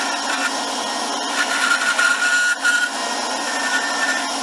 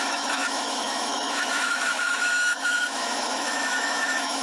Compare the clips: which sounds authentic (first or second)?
first